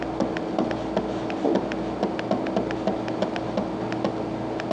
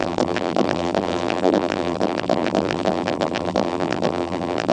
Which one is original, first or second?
first